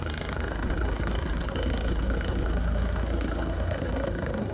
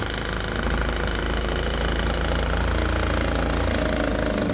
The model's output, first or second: first